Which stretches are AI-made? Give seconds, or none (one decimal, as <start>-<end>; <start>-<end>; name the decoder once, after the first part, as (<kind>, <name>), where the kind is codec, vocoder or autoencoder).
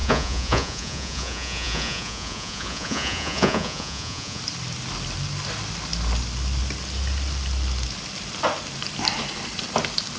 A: 0.0-4.4 (vocoder, Vocos)